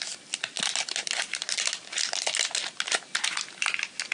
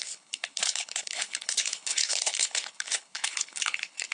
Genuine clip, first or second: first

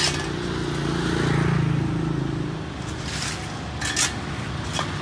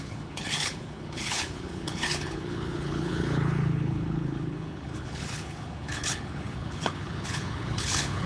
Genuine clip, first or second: first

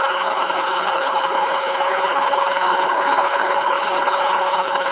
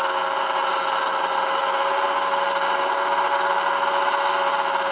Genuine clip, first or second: second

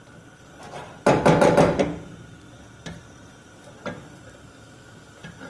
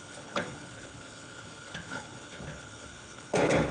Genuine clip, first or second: first